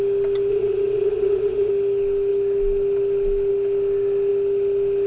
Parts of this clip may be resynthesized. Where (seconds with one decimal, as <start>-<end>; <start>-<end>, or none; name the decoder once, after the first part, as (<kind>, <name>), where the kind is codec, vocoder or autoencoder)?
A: 0.5-1.7 (vocoder, WaveNeXt)